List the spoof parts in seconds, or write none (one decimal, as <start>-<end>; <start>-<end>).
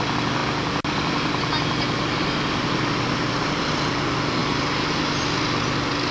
none